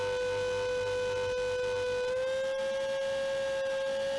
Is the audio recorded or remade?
recorded